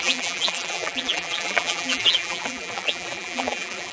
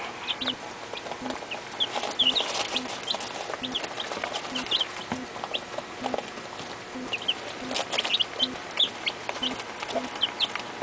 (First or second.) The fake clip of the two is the first